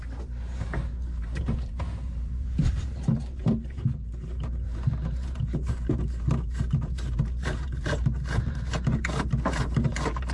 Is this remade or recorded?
remade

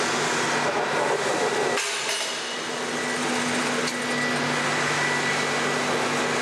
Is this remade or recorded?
recorded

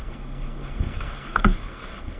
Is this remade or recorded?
remade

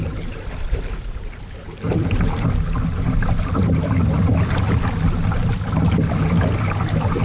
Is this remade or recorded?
recorded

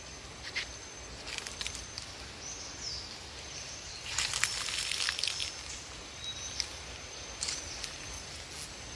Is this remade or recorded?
recorded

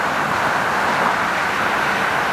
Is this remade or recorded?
recorded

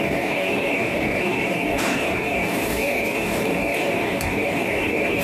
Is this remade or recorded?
remade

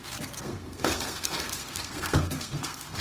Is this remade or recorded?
remade